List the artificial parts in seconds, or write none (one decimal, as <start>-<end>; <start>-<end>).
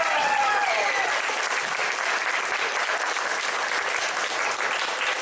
none